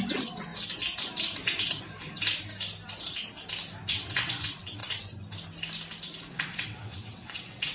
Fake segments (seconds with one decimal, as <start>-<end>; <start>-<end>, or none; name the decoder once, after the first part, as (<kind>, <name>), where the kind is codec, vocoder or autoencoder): 0.0-0.5 (vocoder, WaveNeXt); 3.9-4.8; 6.2-7.7